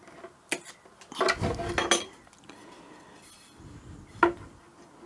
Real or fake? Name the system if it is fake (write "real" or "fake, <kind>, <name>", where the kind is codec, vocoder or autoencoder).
real